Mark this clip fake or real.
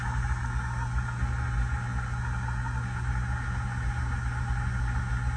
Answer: real